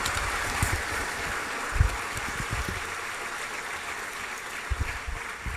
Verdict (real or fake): real